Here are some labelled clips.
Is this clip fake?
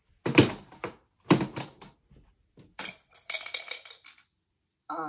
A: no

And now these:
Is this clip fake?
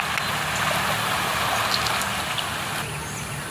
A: no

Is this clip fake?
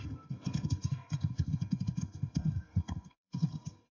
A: yes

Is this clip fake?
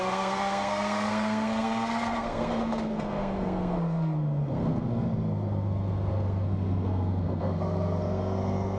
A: yes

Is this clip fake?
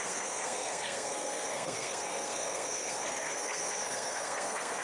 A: yes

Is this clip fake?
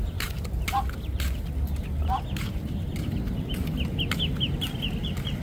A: no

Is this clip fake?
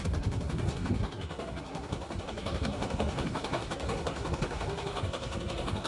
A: yes